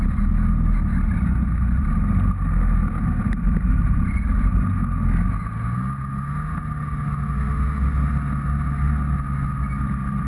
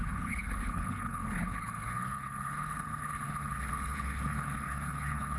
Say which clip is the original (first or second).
first